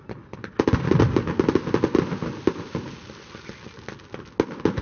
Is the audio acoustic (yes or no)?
yes